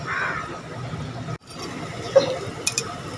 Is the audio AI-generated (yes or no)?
no